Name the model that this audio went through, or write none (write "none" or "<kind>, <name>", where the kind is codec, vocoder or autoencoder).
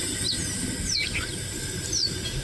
none